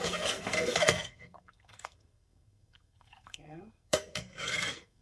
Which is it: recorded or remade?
remade